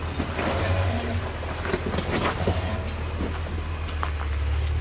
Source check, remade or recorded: recorded